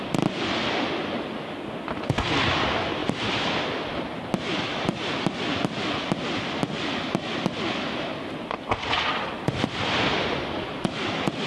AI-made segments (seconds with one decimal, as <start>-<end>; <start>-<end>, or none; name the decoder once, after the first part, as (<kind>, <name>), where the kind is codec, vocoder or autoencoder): none